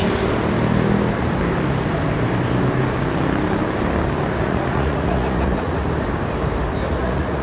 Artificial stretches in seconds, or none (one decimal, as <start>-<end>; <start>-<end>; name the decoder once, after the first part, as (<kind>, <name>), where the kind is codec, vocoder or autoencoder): 4.4-5.8 (vocoder, Vocos); 6.9-7.4